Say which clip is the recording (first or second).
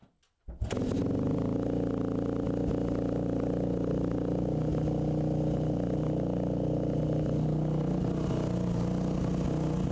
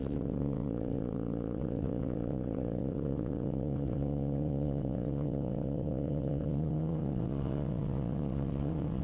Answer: first